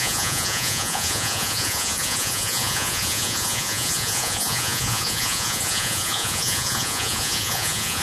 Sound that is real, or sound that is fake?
fake